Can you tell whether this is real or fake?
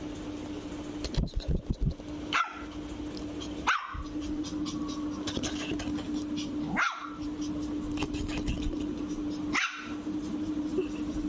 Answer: real